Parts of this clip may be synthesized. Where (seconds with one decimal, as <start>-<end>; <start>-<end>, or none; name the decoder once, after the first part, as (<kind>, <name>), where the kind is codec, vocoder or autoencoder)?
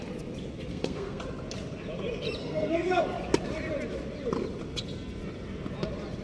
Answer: 0.7-1.2 (codec, SNAC); 2.4-3.0